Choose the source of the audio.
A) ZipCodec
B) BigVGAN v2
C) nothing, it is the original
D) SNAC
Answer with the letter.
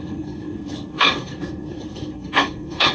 D